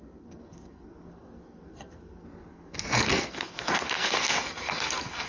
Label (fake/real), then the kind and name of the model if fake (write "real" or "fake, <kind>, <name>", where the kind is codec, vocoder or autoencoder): fake, codec, SNAC